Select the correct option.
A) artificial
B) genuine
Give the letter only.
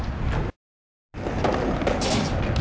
B